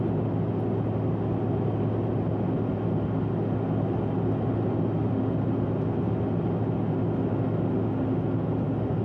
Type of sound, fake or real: real